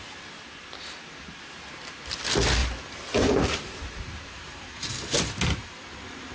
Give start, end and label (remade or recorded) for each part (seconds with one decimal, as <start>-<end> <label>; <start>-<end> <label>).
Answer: 0.0-2.6 recorded; 2.6-4.9 remade; 4.9-6.3 recorded